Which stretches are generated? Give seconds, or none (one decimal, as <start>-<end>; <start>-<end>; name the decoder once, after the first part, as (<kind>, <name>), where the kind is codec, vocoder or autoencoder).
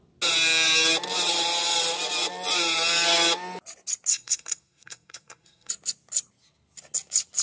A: 4.1-5.7 (codec, SNAC)